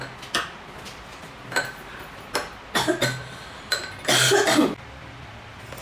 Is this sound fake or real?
real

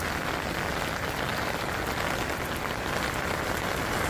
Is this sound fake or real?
real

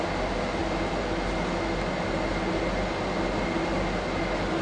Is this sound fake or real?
real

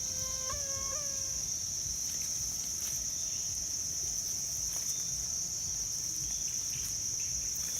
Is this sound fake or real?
real